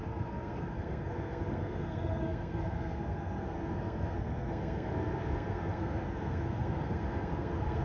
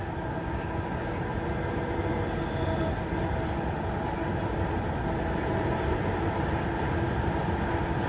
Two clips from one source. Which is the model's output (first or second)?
first